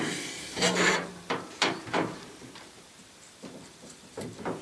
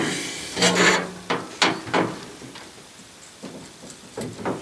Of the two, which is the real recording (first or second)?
second